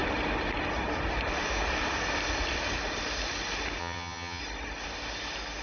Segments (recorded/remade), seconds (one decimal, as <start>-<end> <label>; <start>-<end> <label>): 0.0-3.8 recorded; 3.8-4.4 remade; 4.4-5.6 recorded